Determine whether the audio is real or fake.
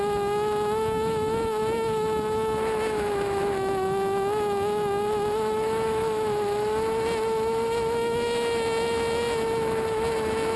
fake